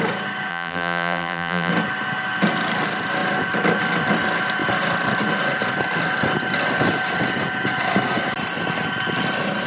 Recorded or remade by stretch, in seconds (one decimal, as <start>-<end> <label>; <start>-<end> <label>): 0.0-0.5 recorded; 0.5-1.7 remade; 1.7-9.7 recorded